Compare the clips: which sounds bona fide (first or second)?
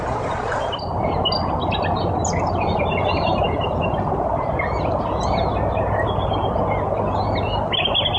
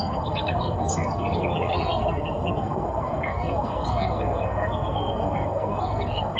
first